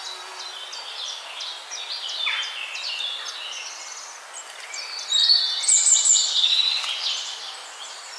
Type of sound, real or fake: real